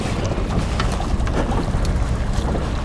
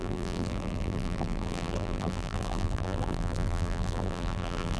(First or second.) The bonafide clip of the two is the first